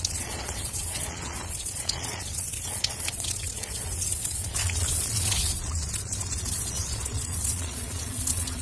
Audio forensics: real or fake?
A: fake